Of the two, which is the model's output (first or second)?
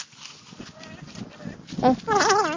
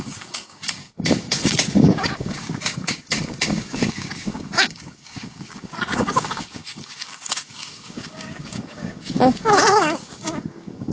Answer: second